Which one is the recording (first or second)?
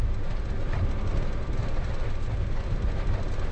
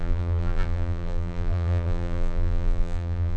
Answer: first